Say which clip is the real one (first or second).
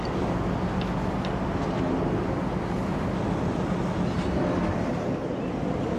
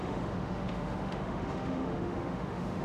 first